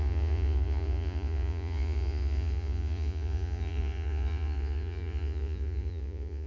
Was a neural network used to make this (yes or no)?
yes